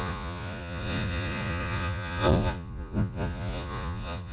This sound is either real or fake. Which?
fake